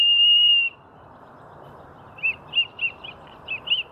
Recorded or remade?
remade